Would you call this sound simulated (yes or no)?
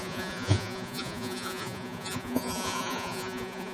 yes